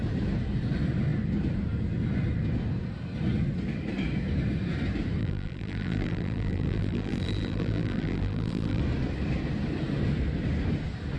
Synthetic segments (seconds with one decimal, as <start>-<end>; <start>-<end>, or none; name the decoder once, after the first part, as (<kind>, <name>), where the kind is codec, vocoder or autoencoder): 5.2-8.8 (vocoder, BigVGAN v2)